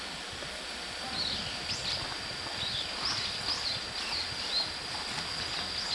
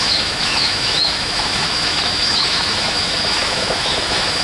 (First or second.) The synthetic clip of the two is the second